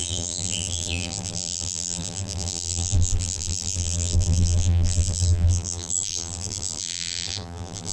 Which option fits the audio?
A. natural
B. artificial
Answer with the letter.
B